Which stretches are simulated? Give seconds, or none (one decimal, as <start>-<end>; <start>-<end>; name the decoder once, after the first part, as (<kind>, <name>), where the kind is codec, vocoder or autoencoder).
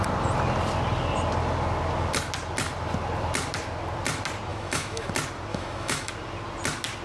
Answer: 4.5-5.1 (autoencoder, DAC-VAE); 5.5-6.1